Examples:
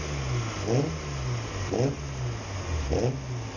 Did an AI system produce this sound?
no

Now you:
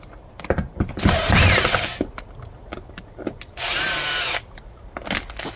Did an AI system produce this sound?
no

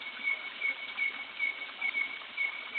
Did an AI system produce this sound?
no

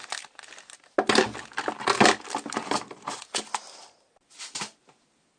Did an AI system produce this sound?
no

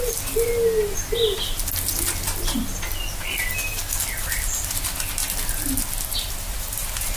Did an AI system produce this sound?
no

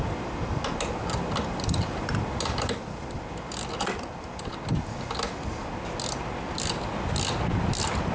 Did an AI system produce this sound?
no